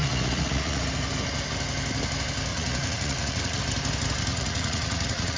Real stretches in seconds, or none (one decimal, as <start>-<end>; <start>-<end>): 0.8-2.5; 3.6-4.3